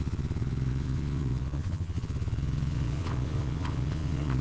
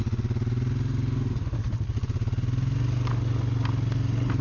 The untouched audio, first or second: second